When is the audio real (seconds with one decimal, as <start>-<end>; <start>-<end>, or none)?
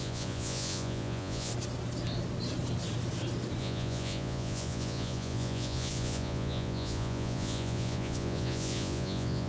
1.5-3.6